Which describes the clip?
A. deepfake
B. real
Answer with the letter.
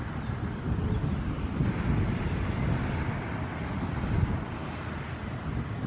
B